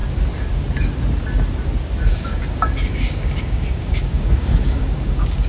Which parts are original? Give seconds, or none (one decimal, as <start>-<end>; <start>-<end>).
0.0-2.1